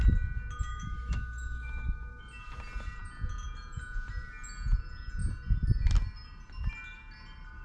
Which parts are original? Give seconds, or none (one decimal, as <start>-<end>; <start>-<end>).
0.0-0.7; 2.2-7.6